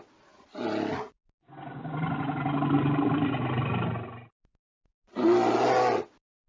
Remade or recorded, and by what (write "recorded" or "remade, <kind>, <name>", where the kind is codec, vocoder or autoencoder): recorded